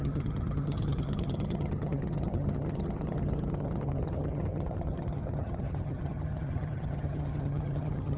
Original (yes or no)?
no